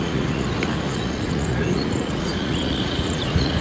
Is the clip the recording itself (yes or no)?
no